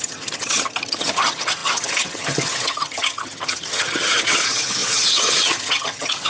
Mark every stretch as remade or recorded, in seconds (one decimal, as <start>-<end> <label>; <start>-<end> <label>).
0.0-6.3 remade